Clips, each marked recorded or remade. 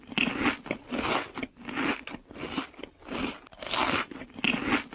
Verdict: recorded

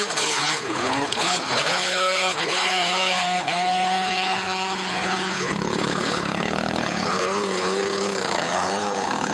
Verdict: remade